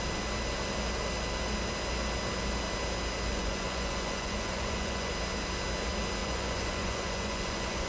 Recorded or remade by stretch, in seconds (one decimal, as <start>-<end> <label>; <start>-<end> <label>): 0.0-3.3 recorded; 3.3-5.1 remade; 5.1-6.2 recorded; 6.2-7.9 remade